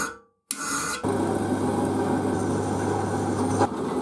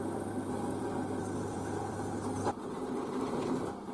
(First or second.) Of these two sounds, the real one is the first